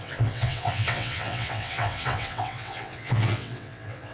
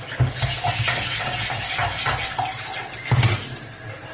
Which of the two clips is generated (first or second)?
first